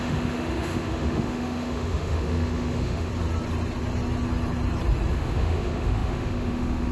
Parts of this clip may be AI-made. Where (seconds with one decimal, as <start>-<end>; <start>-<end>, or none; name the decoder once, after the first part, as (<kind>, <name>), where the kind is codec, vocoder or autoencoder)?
0.0-3.1 (autoencoder, DAC-VAE); 5.1-6.9